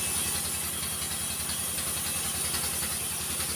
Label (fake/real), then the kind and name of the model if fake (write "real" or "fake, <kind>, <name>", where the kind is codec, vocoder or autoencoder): real